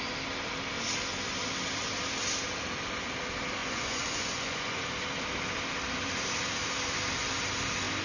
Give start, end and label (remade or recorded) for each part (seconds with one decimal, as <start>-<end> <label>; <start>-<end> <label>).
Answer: 0.0-3.6 recorded; 3.6-4.8 remade; 4.8-8.0 recorded